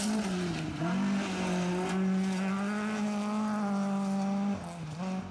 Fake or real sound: real